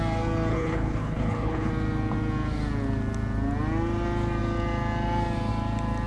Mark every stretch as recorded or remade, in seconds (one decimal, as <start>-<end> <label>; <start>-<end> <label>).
0.0-0.5 recorded; 0.5-1.7 remade; 1.7-6.1 recorded